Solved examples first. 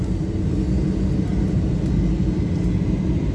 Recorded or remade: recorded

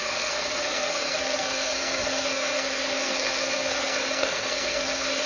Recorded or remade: remade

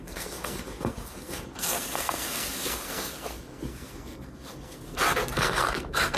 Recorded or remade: remade